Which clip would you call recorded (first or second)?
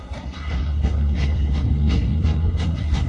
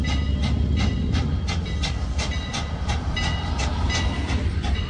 second